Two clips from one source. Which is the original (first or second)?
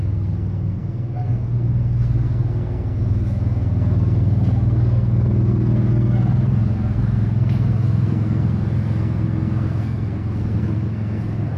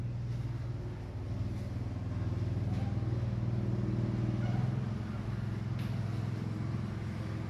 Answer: second